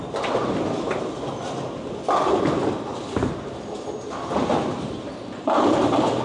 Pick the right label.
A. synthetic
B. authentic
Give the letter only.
B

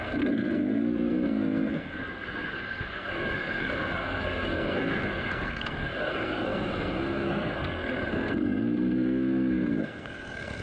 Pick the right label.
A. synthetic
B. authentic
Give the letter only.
A